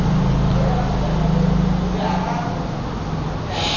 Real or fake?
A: real